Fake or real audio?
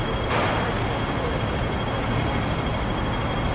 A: real